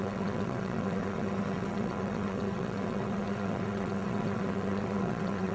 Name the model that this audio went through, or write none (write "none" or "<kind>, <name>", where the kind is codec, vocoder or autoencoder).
vocoder, WaveNeXt